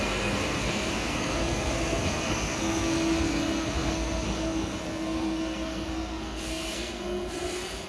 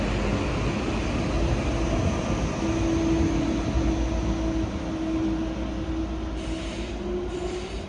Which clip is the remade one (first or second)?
first